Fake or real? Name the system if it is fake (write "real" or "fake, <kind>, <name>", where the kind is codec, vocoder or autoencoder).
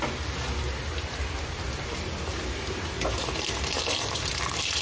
real